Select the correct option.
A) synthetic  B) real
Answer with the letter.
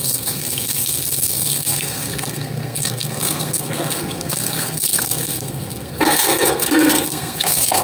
A